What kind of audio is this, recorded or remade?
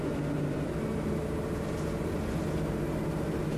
recorded